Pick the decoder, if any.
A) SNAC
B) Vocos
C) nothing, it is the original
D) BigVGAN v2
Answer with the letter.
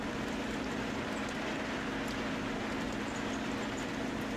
C